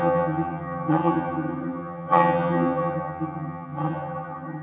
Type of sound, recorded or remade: remade